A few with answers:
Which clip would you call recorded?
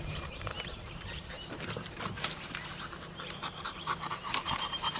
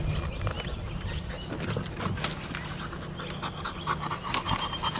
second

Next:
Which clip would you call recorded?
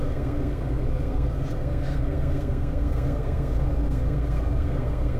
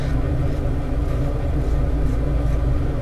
second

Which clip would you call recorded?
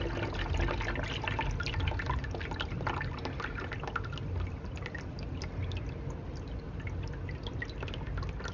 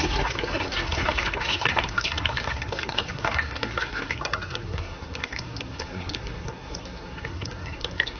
first